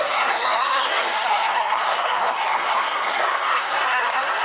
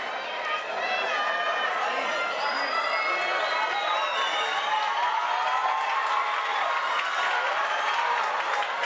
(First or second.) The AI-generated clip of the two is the first